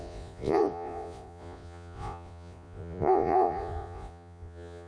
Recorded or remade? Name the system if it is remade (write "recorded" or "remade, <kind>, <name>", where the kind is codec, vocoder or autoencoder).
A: remade, vocoder, Vocos